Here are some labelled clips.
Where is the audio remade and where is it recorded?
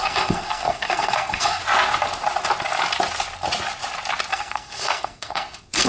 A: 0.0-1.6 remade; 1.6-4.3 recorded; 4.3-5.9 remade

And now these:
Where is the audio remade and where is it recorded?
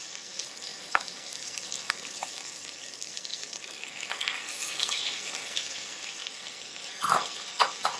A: 0.0-8.0 remade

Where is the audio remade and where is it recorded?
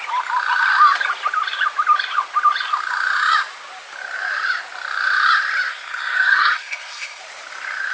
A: 0.0-5.7 recorded; 5.7-7.2 remade; 7.2-7.9 recorded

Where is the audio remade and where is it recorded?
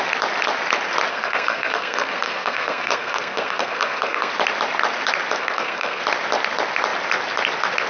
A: 0.0-1.1 recorded; 1.1-4.3 remade; 4.3-5.4 recorded; 5.4-6.0 remade; 6.0-7.9 recorded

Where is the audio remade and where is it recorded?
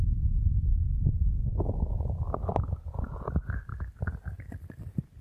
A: 0.0-0.7 recorded; 0.7-1.5 remade; 1.5-5.2 recorded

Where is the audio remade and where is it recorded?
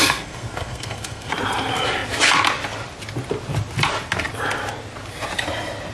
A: 0.0-1.3 remade; 1.3-5.9 recorded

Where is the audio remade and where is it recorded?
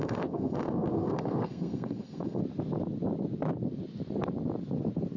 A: 0.0-2.4 remade; 2.4-5.2 recorded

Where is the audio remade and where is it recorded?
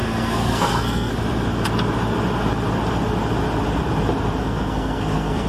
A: 0.0-1.1 remade; 1.1-4.4 recorded; 4.4-5.5 remade